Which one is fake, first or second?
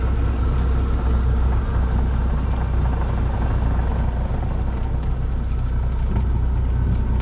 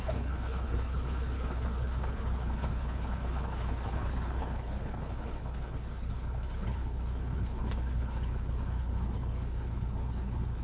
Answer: second